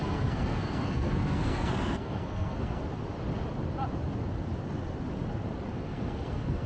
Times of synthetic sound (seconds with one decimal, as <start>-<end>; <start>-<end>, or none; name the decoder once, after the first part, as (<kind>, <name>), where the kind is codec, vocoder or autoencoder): 0.0-2.8 (codec, SNAC); 5.7-6.7

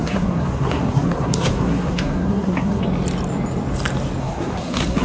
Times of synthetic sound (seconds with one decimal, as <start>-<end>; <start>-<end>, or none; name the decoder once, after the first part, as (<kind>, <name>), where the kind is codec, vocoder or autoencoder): 0.0-2.8 (codec, SNAC); 4.2-5.0

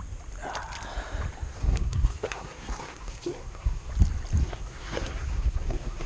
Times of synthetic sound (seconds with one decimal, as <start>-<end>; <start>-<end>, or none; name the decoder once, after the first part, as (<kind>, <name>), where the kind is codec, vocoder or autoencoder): 1.5-3.9 (codec, SNAC); 4.4-6.1